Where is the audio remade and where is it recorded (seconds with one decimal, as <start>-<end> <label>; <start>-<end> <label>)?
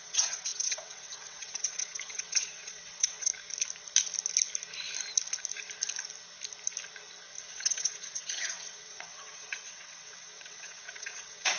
0.0-3.3 remade; 3.3-7.4 recorded; 7.4-11.6 remade